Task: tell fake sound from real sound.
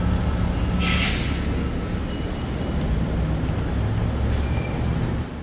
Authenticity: real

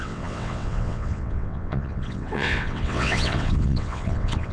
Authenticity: fake